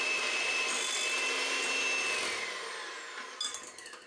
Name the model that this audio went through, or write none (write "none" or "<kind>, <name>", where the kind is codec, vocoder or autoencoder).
none